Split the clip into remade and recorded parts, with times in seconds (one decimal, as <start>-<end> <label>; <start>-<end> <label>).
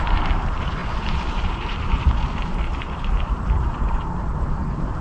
0.0-5.0 remade